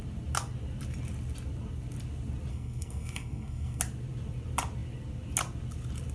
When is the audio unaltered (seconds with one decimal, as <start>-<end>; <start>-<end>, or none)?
0.0-2.5; 3.8-6.1